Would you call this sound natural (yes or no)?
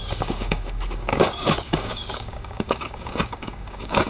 no